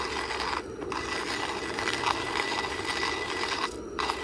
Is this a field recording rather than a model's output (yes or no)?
yes